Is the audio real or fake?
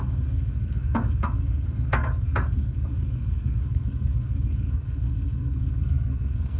fake